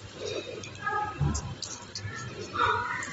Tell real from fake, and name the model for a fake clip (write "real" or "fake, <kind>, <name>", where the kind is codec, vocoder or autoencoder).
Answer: fake, vocoder, BigVGAN v2